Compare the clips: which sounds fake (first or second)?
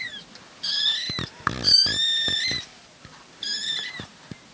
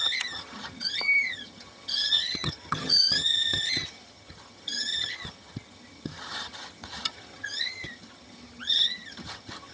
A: second